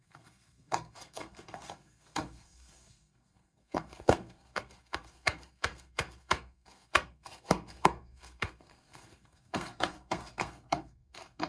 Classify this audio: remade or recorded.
remade